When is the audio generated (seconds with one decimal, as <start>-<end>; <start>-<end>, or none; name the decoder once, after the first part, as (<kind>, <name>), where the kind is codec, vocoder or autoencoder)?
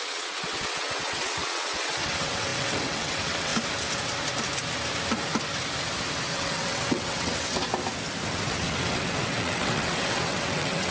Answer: 0.0-3.5 (vocoder, WaveNeXt); 6.3-7.6; 8.3-10.9